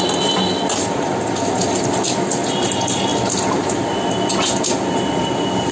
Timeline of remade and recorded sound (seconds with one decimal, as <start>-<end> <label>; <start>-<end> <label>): 0.0-5.7 recorded